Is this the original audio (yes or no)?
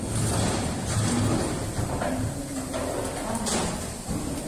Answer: yes